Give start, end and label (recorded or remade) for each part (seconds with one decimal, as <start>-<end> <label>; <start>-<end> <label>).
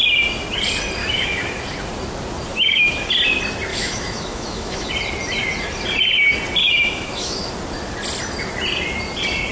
0.0-1.0 recorded; 1.0-1.6 remade; 1.6-2.5 recorded; 2.5-3.1 remade; 3.1-3.7 recorded; 3.7-4.9 remade; 4.9-6.6 recorded; 6.6-7.5 remade; 7.5-9.5 recorded